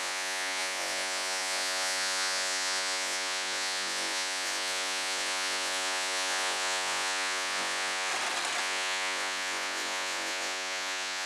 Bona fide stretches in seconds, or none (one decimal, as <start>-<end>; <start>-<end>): 8.1-8.6